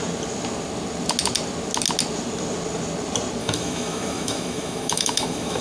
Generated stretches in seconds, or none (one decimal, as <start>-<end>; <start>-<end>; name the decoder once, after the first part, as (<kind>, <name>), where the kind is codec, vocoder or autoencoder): 3.4-5.6 (autoencoder, DAC-VAE)